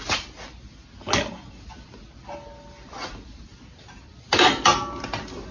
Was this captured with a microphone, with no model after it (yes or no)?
yes